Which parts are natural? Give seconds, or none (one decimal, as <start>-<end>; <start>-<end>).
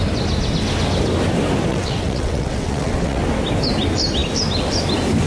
0.0-1.7; 3.2-5.3